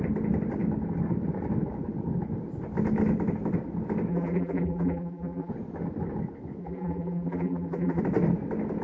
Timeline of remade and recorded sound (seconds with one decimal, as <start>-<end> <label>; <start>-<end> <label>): 0.0-4.1 recorded; 4.1-5.5 remade; 5.5-6.6 recorded; 6.6-8.0 remade; 8.0-8.8 recorded